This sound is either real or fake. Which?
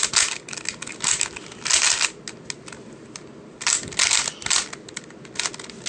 real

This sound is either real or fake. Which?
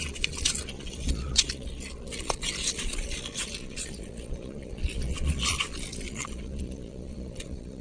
fake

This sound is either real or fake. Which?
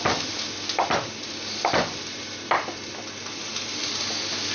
real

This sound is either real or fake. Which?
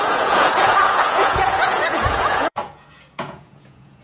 fake